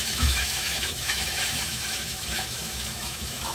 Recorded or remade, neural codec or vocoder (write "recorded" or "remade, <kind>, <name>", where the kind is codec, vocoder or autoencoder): remade, autoencoder, DAC-VAE